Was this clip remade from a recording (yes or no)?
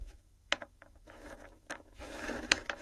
yes